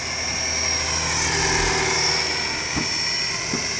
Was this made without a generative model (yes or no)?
yes